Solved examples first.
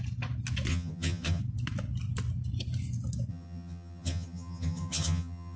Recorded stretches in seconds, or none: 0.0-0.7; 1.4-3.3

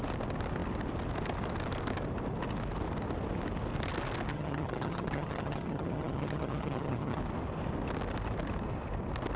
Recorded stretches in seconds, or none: 0.0-4.3; 7.2-9.4

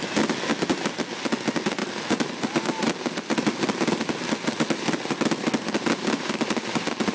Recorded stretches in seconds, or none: 0.0-7.1

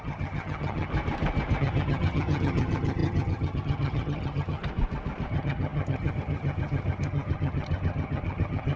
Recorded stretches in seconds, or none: 0.9-1.6; 4.6-5.3

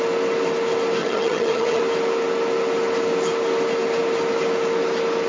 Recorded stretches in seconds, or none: 0.0-1.0; 1.8-5.3

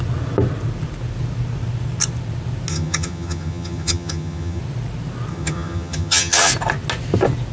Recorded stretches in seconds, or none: 0.0-2.7; 4.6-5.3; 6.5-7.5